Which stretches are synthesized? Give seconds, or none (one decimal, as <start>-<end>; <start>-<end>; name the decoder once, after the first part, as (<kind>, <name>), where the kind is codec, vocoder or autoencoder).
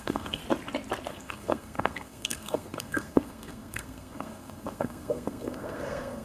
0.0-0.4 (codec, SNAC); 1.1-6.2